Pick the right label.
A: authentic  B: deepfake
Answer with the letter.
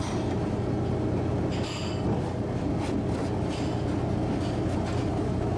A